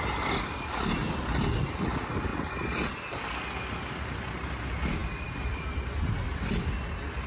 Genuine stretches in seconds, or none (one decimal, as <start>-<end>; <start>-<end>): 0.0-7.3

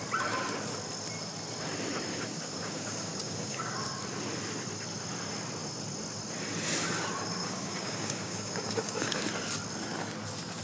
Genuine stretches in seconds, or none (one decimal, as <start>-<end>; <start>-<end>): 0.0-2.1; 3.7-7.4; 9.2-10.6